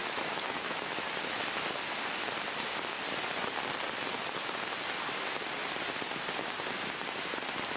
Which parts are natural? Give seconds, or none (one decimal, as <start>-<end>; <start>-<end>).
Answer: 1.2-7.8